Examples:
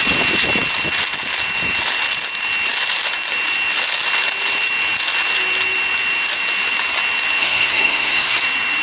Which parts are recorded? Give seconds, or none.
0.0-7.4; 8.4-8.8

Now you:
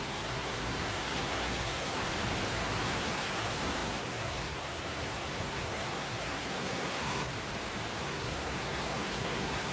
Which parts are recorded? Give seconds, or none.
2.0-2.5; 7.3-8.0

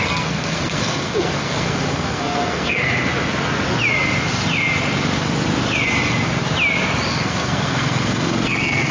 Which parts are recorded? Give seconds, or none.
3.1-7.1

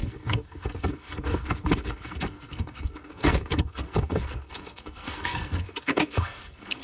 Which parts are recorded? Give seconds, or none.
none

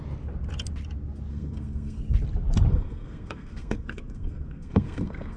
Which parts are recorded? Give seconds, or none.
0.0-1.3; 2.0-2.7

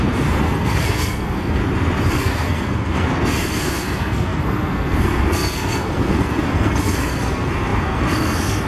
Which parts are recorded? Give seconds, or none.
1.6-2.1

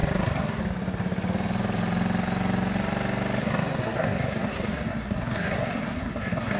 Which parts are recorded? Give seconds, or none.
0.6-3.4